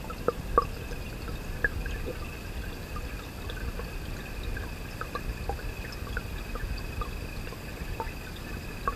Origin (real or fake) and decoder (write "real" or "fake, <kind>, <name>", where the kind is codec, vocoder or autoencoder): real